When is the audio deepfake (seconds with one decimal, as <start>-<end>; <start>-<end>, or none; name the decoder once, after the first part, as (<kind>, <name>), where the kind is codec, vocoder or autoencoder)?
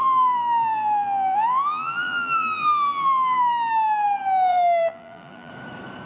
0.0-3.7 (vocoder, BigVGAN v2); 4.5-5.5